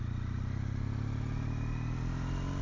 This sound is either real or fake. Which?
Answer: real